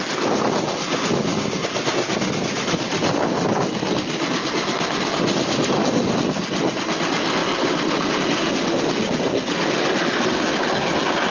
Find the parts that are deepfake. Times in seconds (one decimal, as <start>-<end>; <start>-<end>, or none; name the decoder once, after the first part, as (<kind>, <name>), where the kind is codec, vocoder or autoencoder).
none